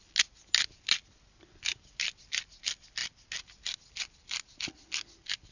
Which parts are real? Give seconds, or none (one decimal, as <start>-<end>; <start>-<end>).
0.0-5.5